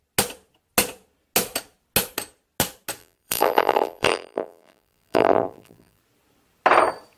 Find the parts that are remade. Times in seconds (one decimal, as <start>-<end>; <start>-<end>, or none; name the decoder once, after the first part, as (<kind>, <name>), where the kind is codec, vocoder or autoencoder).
3.0-6.0 (vocoder, BigVGAN v2)